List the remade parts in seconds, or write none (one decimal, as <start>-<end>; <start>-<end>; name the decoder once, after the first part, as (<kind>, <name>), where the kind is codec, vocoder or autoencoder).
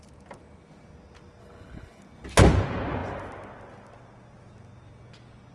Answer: 1.4-2.0 (codec, HILCodec)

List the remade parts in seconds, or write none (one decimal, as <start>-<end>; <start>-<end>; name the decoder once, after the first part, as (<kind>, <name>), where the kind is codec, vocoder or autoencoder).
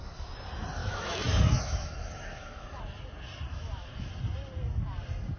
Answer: 0.8-2.8 (autoencoder, DAC-VAE); 3.5-4.1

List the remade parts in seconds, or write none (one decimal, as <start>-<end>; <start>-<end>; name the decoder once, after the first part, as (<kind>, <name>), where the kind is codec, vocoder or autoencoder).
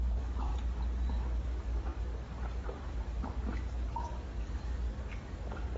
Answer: 0.0-0.5 (codec, DAC); 1.1-5.8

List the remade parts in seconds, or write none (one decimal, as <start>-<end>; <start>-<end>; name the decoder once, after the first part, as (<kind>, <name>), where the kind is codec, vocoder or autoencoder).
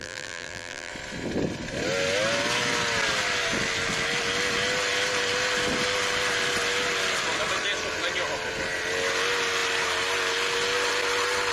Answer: 0.0-0.9 (vocoder, BigVGAN v2)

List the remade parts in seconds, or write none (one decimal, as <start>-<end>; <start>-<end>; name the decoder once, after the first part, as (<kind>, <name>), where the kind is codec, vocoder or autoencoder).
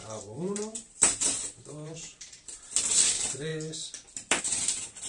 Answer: 0.0-3.5 (vocoder, BigVGAN v2); 4.4-5.1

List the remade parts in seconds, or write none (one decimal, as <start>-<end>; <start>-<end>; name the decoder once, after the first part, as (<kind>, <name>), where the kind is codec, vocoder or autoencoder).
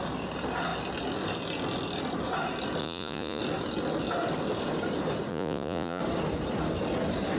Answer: 2.8-3.4 (vocoder, Vocos); 5.3-6.0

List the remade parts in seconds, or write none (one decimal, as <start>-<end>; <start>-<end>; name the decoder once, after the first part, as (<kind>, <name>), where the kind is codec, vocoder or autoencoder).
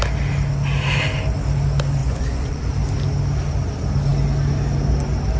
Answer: 2.0-2.6 (vocoder, Vocos)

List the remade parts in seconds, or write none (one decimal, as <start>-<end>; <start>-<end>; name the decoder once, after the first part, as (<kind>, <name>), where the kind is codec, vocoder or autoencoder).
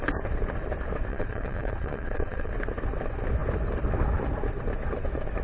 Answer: 1.1-2.5 (vocoder, WaveNeXt)